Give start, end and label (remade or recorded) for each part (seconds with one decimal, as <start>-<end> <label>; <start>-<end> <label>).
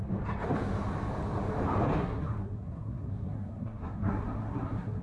0.0-2.0 recorded; 2.0-5.0 remade